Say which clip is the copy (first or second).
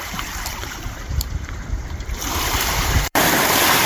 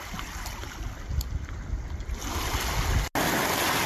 first